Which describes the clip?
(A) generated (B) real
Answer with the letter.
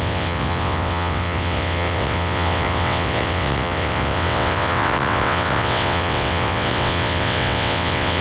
A